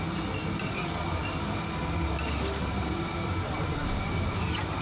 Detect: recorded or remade recorded